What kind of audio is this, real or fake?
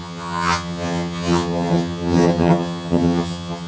fake